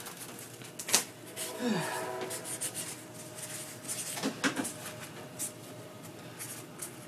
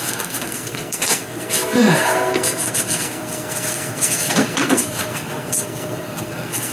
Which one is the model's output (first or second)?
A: second